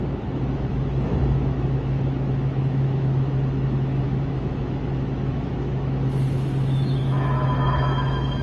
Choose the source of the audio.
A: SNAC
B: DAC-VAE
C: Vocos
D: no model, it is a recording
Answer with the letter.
B